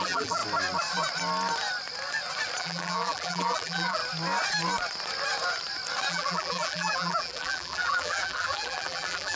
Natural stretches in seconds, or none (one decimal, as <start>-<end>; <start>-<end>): 0.4-2.6; 4.0-6.1